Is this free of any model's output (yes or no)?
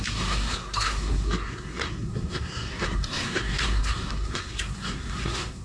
no